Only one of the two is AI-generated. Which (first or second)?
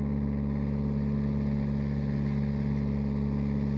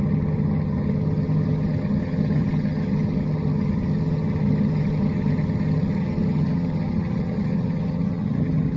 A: second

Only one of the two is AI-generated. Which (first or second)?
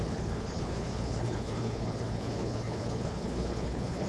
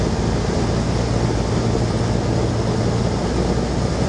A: first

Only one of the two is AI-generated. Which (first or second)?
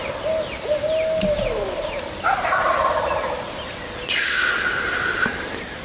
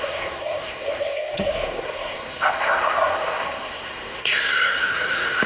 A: second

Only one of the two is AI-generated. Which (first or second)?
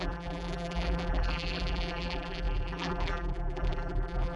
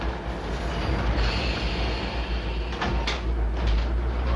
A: first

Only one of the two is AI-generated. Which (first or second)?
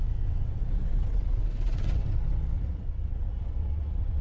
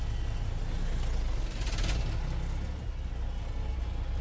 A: first